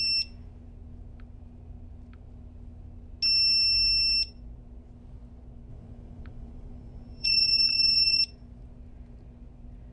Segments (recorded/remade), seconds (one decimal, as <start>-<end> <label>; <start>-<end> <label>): 0.0-5.7 recorded; 5.7-8.2 remade; 8.2-9.9 recorded